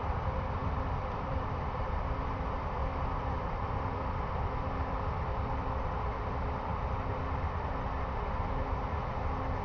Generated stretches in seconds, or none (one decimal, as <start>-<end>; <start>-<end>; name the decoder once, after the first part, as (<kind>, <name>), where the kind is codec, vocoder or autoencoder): 0.0-2.8 (vocoder, BigVGAN v2); 4.3-6.7